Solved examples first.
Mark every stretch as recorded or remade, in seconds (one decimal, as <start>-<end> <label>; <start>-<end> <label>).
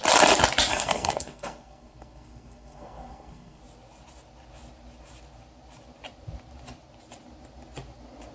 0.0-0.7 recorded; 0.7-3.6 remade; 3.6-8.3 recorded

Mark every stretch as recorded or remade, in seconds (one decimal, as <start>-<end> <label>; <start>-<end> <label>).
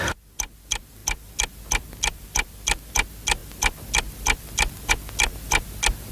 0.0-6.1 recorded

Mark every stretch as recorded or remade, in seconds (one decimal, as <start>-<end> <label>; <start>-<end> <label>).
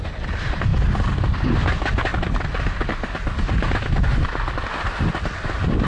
0.0-5.9 recorded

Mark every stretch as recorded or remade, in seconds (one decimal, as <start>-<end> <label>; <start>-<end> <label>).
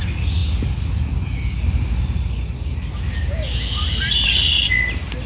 0.0-5.3 recorded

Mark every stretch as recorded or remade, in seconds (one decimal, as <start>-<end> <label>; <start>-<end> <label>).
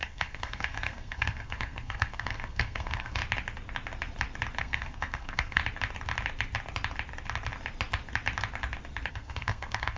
0.0-3.2 remade; 3.2-4.6 recorded; 4.6-5.6 remade; 5.6-9.1 recorded; 9.1-10.0 remade